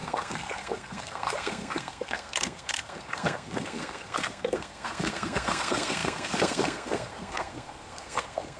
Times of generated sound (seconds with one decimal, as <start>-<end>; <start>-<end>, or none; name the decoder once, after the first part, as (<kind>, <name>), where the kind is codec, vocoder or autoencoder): 0.0-8.6 (codec, SNAC)